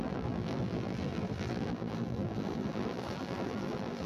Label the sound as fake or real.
fake